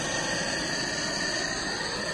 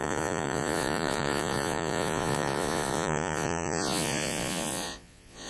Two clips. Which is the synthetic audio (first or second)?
second